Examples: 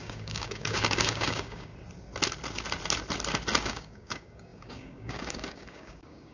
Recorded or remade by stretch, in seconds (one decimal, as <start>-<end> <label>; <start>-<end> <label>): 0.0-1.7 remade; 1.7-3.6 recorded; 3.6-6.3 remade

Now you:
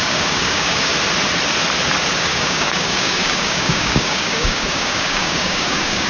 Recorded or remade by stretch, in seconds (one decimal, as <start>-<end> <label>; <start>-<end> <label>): 0.0-0.9 remade; 0.9-2.2 recorded; 2.2-6.1 remade

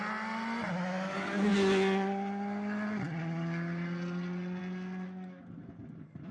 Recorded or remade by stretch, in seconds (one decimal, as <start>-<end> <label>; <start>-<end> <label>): 0.0-6.3 recorded